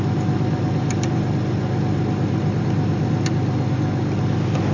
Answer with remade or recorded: recorded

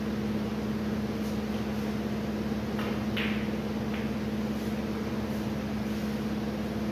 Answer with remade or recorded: recorded